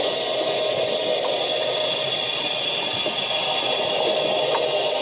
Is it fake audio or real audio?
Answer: real